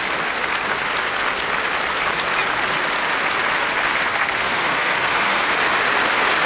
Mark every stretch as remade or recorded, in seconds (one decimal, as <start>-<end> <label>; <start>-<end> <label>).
0.0-4.1 recorded; 4.1-5.5 remade; 5.5-6.5 recorded